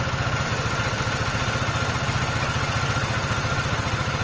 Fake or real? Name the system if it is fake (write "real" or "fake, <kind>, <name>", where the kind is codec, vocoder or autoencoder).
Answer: real